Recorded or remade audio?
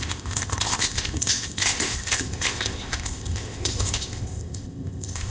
remade